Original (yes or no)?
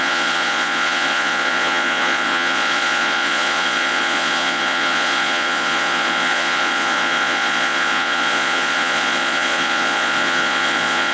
no